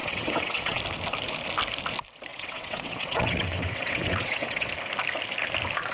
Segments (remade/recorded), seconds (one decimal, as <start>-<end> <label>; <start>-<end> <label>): 0.0-0.8 remade; 0.8-2.3 recorded; 2.3-4.7 remade; 4.7-5.9 recorded